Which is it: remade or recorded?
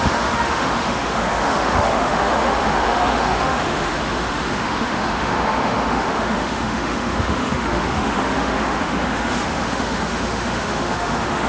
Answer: remade